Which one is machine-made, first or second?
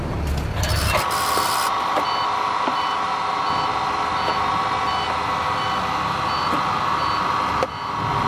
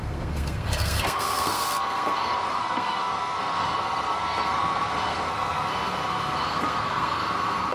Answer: second